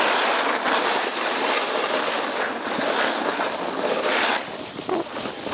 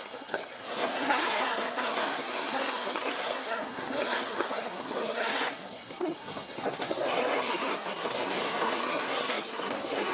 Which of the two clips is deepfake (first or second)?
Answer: second